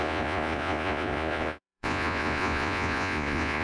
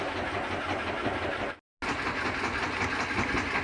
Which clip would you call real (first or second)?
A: second